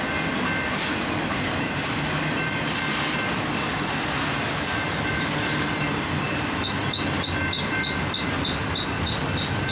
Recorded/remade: recorded